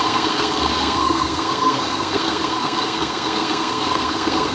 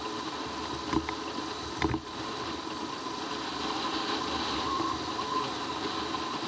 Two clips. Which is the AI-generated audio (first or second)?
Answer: first